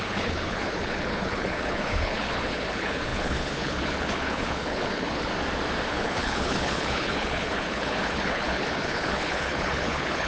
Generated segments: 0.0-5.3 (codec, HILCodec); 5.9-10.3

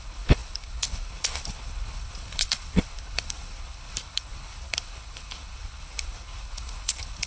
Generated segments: 0.0-7.3 (codec, HILCodec)

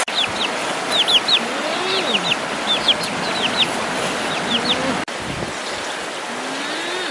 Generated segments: none

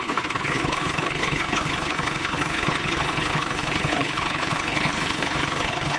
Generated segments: 0.0-6.0 (codec, HILCodec)

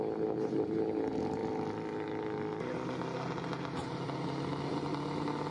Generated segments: none

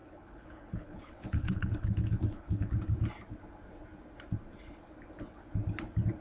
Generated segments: 0.0-2.8 (codec, HILCodec)

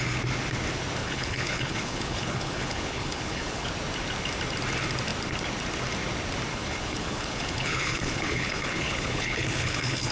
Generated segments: 1.0-3.7 (codec, HILCodec); 6.5-10.1